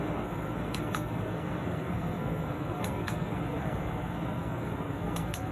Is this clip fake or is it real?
fake